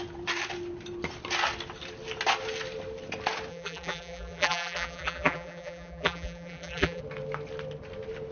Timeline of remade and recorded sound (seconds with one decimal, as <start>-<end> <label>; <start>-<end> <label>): 0.0-3.5 recorded; 3.5-7.0 remade; 7.0-8.3 recorded